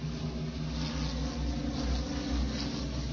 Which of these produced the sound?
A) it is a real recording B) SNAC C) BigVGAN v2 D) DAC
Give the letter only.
A